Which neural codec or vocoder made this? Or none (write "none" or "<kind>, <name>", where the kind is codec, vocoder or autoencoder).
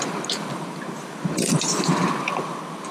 none